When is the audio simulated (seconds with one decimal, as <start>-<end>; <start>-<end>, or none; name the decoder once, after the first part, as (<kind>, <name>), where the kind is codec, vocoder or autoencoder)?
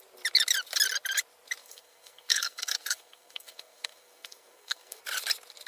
1.6-5.0 (codec, SNAC)